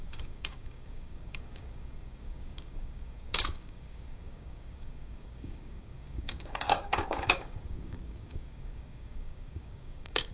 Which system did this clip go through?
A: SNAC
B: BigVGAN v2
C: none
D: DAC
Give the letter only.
D